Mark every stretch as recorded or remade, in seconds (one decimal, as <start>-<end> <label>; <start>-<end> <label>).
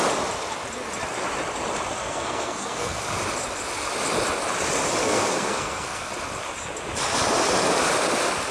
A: 0.0-2.0 recorded; 2.0-3.0 remade; 3.0-5.0 recorded; 5.0-6.1 remade; 6.1-8.5 recorded